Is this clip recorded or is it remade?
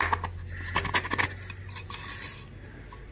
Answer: recorded